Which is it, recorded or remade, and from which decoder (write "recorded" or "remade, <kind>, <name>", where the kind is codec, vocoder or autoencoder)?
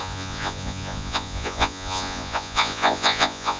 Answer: remade, vocoder, Vocos